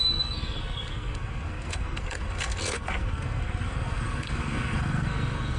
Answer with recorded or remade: remade